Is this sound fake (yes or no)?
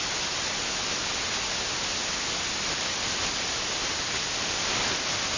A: no